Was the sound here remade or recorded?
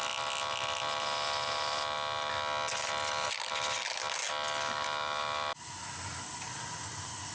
recorded